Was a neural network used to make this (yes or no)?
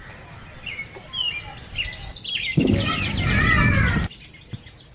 no